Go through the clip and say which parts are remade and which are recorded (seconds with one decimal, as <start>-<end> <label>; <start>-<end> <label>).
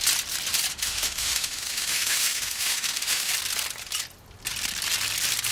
0.0-0.7 recorded; 0.7-3.3 remade; 3.3-5.5 recorded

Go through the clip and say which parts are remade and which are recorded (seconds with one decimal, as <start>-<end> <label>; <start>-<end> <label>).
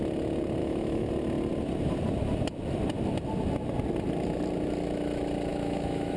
0.0-0.6 recorded; 0.6-1.1 remade; 1.1-5.5 recorded; 5.5-6.2 remade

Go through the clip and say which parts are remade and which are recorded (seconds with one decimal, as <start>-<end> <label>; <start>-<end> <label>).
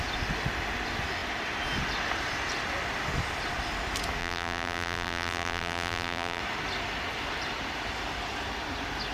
0.0-4.2 recorded; 4.2-6.4 remade; 6.4-9.1 recorded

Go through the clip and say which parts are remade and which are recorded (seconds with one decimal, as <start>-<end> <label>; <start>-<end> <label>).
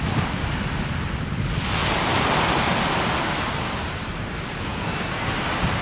0.0-4.7 recorded; 4.7-5.3 remade; 5.3-5.8 recorded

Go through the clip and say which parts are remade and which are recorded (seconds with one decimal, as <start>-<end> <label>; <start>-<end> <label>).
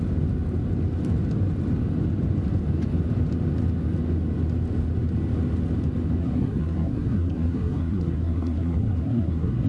0.0-6.2 recorded; 6.2-9.7 remade